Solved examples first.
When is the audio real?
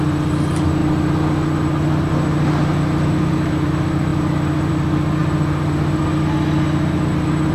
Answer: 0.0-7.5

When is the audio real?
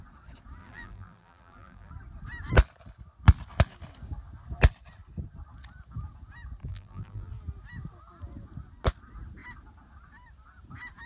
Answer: 0.0-0.6; 1.9-6.7; 7.3-11.1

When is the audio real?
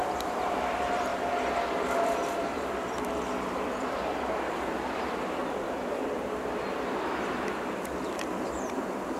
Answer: 1.1-2.0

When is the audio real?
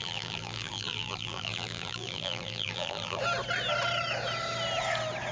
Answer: 3.2-5.3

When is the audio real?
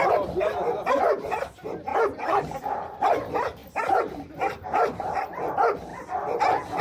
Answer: 1.9-2.6; 5.9-6.8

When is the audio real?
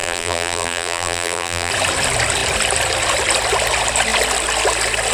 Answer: 1.7-5.1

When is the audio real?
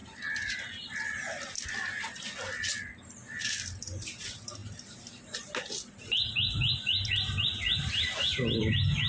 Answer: 0.0-3.4; 4.6-5.8; 7.5-8.6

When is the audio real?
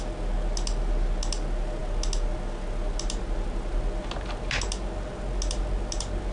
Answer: 0.0-6.3